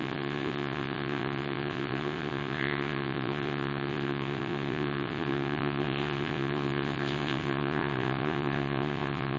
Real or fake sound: fake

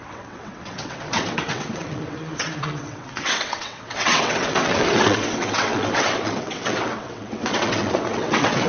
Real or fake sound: fake